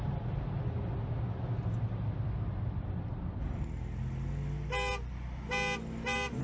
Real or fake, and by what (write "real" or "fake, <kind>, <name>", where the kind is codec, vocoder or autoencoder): real